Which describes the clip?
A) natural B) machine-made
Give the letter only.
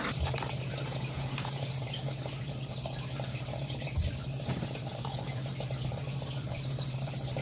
B